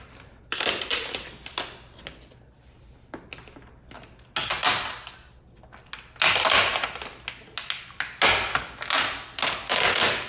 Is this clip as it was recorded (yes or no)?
yes